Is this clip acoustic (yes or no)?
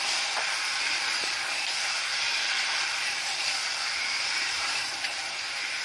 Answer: no